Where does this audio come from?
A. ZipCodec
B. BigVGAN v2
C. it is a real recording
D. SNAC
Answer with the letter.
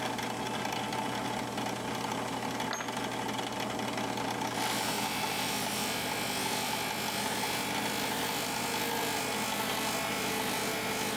C